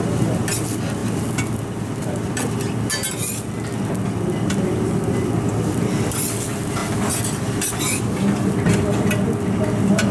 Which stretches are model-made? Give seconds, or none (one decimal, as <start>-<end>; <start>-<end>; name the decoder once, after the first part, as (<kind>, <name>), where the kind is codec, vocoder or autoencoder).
none